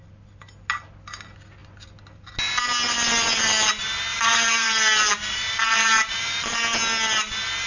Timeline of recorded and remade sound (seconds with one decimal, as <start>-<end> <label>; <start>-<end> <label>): 0.0-4.1 recorded; 4.1-6.6 remade; 6.6-7.7 recorded